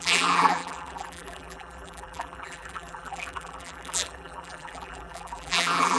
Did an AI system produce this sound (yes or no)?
yes